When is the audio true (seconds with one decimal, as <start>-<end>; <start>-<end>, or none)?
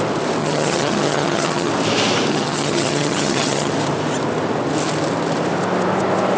0.0-0.4; 1.7-2.3; 3.7-6.4